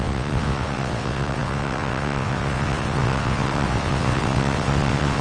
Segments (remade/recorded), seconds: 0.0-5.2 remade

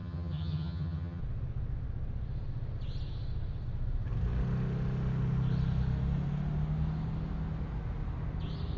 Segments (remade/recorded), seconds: 0.0-1.2 remade; 1.2-8.8 recorded